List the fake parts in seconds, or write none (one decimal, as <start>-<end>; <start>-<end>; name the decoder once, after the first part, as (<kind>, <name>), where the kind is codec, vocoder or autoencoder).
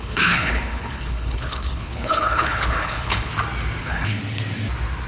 0.0-3.3 (codec, HILCodec); 3.8-4.2